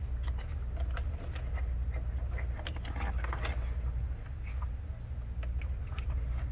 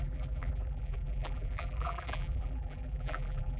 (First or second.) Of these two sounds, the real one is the first